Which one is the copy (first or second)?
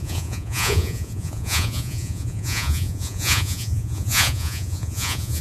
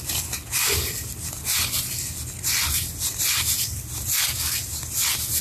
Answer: first